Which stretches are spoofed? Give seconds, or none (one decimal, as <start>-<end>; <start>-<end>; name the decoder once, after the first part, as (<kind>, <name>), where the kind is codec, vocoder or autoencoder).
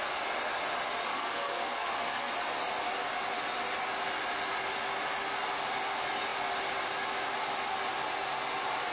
1.1-2.3 (codec, SNAC)